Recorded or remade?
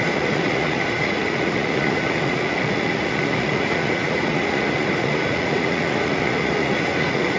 remade